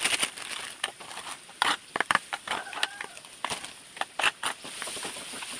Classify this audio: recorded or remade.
recorded